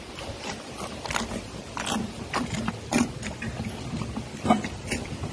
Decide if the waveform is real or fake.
real